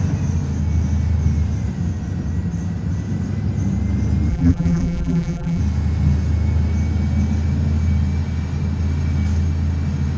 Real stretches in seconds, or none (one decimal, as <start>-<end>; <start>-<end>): 0.0-4.3; 5.6-10.2